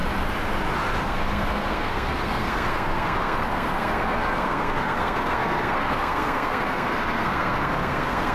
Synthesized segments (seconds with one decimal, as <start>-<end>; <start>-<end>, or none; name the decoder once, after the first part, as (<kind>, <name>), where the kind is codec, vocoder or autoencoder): 1.0-8.3 (codec, SNAC)

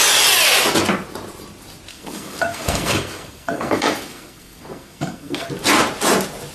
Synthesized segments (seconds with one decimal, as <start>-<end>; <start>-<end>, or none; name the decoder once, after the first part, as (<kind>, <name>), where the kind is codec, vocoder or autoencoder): 1.9-5.5 (codec, SNAC)

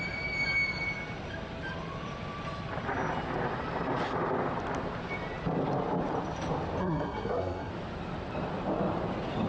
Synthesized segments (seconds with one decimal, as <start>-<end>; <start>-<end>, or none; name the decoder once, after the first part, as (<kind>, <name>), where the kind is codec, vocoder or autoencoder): 6.8-7.7 (codec, SNAC)

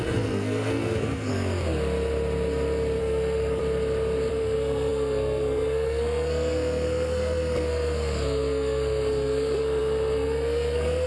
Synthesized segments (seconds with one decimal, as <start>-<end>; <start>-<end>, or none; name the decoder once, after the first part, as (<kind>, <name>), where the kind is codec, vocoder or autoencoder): 0.0-1.3 (codec, SNAC); 3.0-3.6; 4.3-11.1

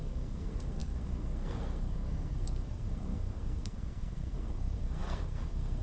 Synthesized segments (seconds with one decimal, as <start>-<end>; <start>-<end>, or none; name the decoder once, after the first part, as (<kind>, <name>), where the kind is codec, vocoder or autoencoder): 0.0-5.8 (codec, SNAC)

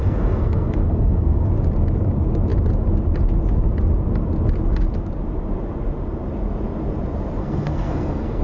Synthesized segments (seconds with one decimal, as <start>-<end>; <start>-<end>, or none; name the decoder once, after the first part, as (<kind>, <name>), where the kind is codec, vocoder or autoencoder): 0.0-1.5 (codec, SNAC); 7.4-8.4

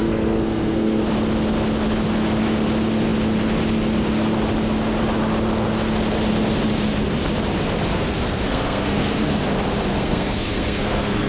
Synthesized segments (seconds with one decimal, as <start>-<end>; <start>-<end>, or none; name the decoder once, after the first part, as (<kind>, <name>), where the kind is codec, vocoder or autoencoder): 0.0-1.0 (codec, SNAC); 7.9-9.4; 9.9-11.3

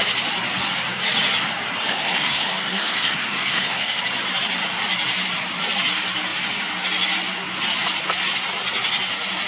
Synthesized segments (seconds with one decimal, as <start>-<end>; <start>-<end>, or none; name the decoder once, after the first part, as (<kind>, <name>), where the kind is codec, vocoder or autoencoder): 1.9-4.0 (codec, SNAC)